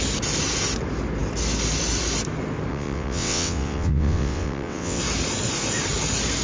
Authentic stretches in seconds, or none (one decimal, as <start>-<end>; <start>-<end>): 0.0-2.7; 5.0-6.4